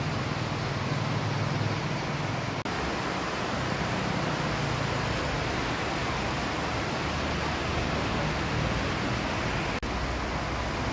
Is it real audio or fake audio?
real